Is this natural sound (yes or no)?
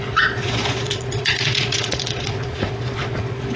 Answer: no